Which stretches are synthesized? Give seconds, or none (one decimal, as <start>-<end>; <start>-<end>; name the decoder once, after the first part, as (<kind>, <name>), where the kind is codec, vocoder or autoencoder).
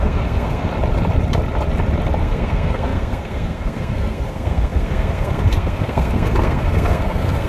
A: 0.0-0.7 (codec, SNAC); 2.2-7.5